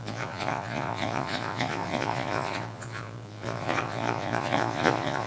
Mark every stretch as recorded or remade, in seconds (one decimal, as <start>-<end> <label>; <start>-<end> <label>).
0.0-5.3 remade